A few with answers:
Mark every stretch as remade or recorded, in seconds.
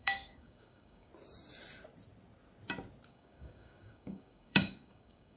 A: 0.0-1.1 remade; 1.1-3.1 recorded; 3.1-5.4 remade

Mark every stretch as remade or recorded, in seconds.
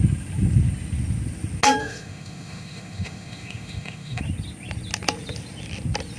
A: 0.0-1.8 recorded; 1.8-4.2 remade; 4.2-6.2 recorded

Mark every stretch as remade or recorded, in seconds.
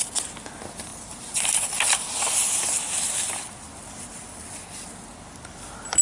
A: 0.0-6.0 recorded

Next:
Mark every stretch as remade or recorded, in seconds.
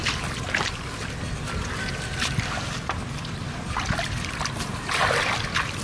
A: 0.0-5.8 recorded